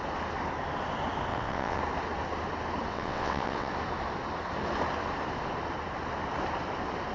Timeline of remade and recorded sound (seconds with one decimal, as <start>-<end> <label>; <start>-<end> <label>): 0.0-1.3 recorded; 1.3-1.8 remade; 1.8-2.9 recorded; 2.9-3.7 remade; 3.7-7.1 recorded

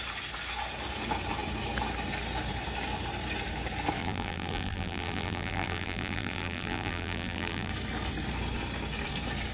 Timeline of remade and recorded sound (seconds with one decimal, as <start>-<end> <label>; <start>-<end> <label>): 0.0-4.0 recorded; 4.0-7.7 remade; 7.7-9.5 recorded

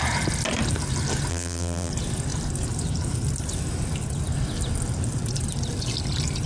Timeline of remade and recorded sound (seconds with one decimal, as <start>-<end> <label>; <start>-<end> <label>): 0.0-1.3 recorded; 1.3-1.9 remade; 1.9-6.5 recorded

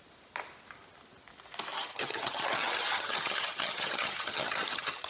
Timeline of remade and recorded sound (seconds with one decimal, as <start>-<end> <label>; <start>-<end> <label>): 0.0-1.7 recorded; 1.7-5.1 remade

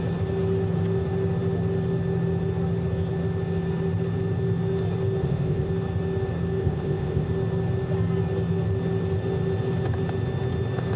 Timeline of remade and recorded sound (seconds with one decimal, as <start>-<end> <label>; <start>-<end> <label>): 0.0-5.2 recorded; 5.2-5.7 remade; 5.7-6.6 recorded; 6.6-7.3 remade; 7.3-11.0 recorded

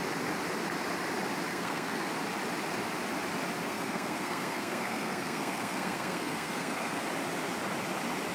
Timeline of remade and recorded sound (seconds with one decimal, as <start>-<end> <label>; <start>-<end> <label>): 0.0-1.5 recorded; 1.5-2.1 remade; 2.1-3.6 recorded; 3.6-7.0 remade; 7.0-8.3 recorded